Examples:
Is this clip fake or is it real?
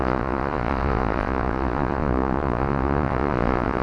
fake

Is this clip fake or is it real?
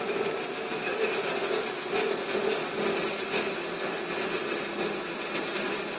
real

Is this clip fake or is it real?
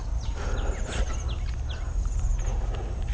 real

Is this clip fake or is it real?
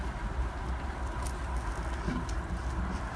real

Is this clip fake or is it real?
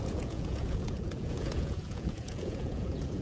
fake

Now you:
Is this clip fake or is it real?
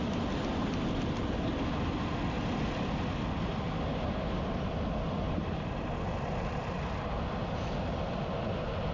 real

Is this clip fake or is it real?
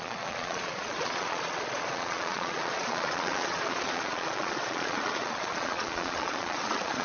fake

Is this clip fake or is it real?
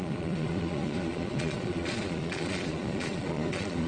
fake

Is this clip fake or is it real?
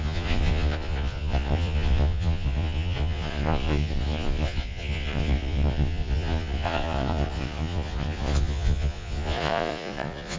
fake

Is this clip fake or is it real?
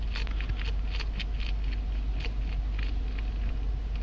real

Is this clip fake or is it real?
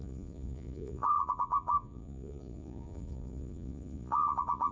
fake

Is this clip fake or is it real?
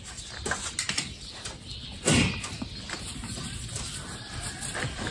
real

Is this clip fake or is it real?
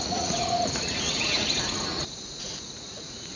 fake